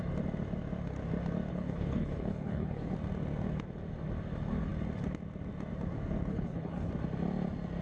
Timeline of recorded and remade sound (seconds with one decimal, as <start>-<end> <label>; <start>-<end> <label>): 0.0-1.5 recorded; 1.5-2.9 remade; 2.9-6.3 recorded; 6.3-6.9 remade; 6.9-7.8 recorded